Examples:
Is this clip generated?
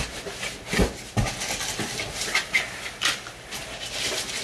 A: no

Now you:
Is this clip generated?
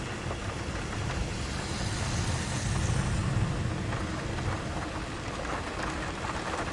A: no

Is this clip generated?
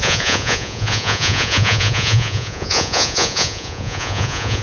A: yes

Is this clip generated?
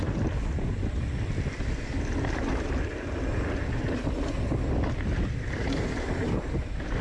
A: no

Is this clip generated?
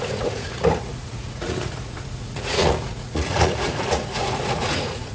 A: yes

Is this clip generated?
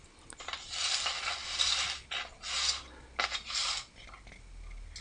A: no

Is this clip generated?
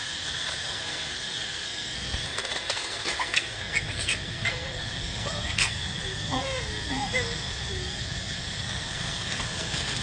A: yes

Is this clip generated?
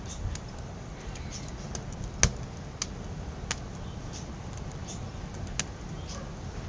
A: no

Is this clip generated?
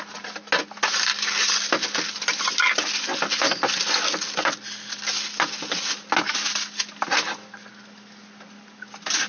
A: no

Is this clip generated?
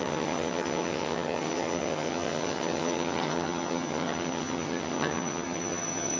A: yes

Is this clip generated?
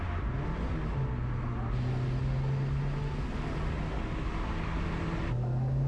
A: no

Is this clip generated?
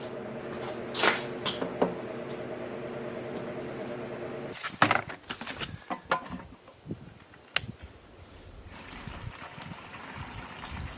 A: no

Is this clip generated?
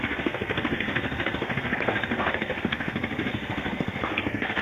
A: yes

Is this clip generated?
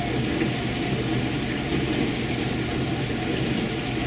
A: no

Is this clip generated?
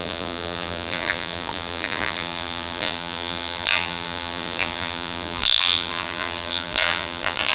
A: yes